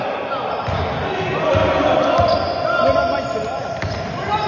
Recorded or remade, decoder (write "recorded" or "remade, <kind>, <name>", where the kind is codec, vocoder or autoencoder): recorded